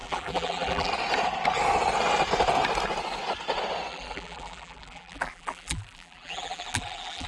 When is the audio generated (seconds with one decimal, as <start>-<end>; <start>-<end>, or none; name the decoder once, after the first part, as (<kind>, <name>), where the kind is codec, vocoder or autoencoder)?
0.0-0.9 (vocoder, BigVGAN v2); 3.9-7.3